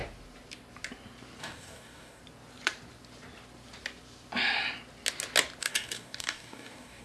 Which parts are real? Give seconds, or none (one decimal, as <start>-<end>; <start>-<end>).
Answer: 0.0-1.4; 2.2-5.6